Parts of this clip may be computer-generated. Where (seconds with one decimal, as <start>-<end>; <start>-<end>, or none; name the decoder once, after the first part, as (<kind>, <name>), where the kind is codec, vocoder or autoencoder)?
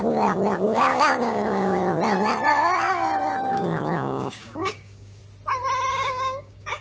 0.0-1.8 (codec, DAC); 3.5-5.2; 5.9-6.8